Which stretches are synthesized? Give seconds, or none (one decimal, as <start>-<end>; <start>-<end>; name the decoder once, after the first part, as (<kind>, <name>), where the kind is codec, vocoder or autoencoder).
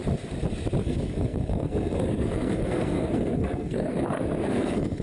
0.8-5.0 (codec, SNAC)